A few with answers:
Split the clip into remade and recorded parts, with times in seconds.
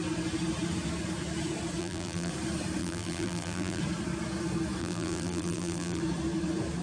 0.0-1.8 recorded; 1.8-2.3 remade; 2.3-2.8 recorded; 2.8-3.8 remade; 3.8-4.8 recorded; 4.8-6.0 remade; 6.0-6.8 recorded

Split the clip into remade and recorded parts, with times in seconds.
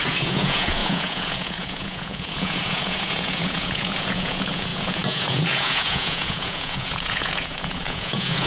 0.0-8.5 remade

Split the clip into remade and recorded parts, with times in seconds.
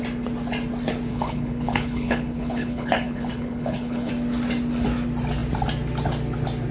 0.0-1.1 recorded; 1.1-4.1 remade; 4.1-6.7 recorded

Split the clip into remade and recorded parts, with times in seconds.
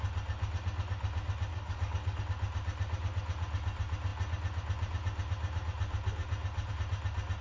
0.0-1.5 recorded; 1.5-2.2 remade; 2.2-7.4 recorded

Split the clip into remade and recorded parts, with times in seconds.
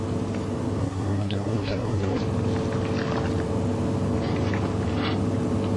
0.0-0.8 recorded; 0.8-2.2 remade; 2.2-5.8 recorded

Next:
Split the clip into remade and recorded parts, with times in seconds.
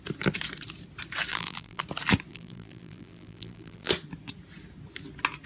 0.0-1.3 recorded; 1.3-1.8 remade; 1.8-2.3 recorded; 2.3-3.9 remade; 3.9-5.5 recorded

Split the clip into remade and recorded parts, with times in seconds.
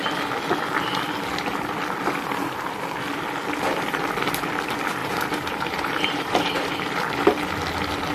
0.0-5.0 recorded; 5.0-6.7 remade; 6.7-8.1 recorded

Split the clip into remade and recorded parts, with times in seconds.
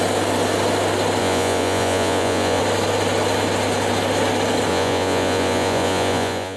0.0-1.2 recorded; 1.2-2.6 remade; 2.6-4.7 recorded; 4.7-6.6 remade